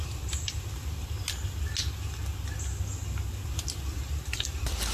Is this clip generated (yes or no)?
no